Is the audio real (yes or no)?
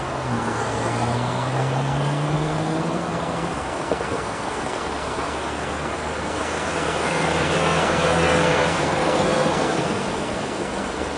no